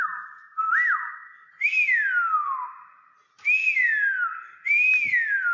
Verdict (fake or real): real